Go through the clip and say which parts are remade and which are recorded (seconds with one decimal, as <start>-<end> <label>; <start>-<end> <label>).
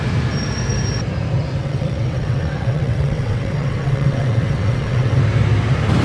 0.0-1.6 recorded; 1.6-5.2 remade; 5.2-6.0 recorded